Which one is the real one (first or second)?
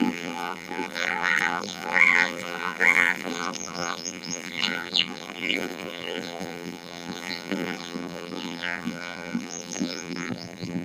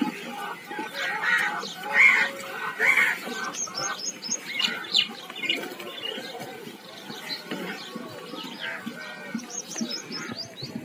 second